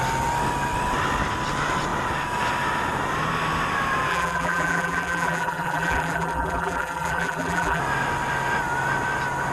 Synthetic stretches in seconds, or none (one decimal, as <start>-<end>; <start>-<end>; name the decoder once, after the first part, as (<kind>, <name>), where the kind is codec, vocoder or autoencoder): 4.1-7.8 (vocoder, BigVGAN v2)